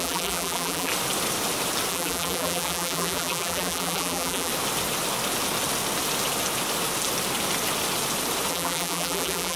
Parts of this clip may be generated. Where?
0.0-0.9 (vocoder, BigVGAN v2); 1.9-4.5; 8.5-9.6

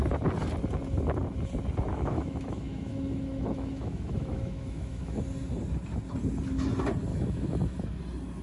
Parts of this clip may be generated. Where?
1.9-5.2 (autoencoder, DAC-VAE); 7.1-8.0

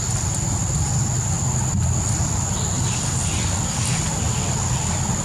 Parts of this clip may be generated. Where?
none

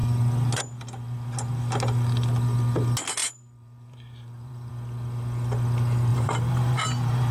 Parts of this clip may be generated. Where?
3.2-4.7 (vocoder, BigVGAN v2); 6.1-7.3

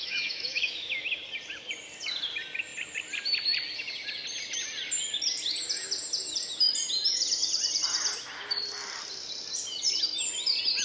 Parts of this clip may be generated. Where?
0.0-1.1 (autoencoder, DAC-VAE)

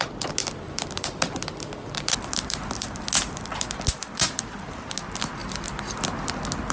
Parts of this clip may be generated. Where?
0.4-4.4 (vocoder, BigVGAN v2); 5.4-6.0

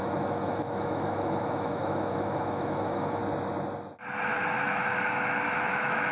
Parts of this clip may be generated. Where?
0.0-3.2 (autoencoder, DAC-VAE); 4.6-6.1

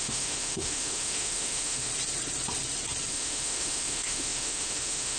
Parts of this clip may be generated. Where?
0.0-1.9 (autoencoder, DAC-VAE); 3.1-5.2